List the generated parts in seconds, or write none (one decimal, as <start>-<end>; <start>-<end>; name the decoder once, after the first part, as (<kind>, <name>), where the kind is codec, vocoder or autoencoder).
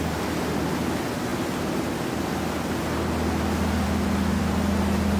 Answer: none